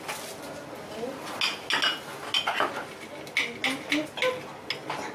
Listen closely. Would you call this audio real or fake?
real